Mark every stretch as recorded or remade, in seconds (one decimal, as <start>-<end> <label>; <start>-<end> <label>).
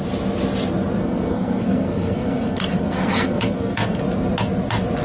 0.0-1.0 recorded; 1.0-4.0 remade; 4.0-5.0 recorded